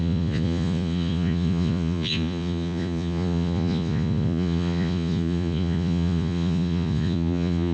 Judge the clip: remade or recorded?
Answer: remade